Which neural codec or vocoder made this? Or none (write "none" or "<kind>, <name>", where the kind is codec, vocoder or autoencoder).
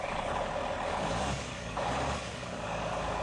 codec, DAC